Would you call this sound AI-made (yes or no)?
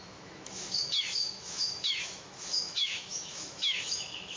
yes